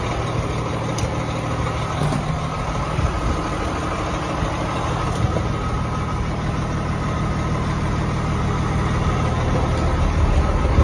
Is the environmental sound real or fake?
real